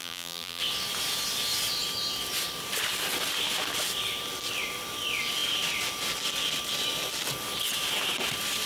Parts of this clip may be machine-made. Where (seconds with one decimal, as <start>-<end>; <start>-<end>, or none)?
0.0-0.6